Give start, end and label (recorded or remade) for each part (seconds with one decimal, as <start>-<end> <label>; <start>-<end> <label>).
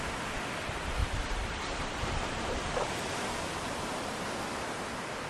0.0-1.0 recorded; 1.0-4.2 remade; 4.2-5.3 recorded